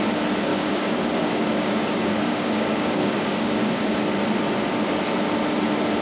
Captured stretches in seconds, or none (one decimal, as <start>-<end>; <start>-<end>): 0.0-0.5; 4.0-6.0

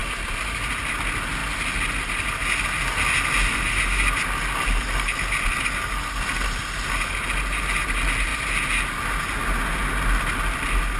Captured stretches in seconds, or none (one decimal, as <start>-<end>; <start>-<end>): 0.0-11.0